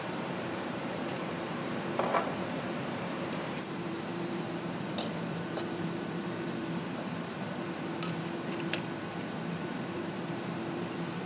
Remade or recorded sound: remade